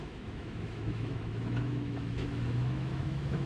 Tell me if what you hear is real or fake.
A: fake